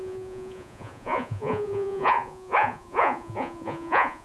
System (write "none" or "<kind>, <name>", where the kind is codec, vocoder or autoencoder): vocoder, Vocos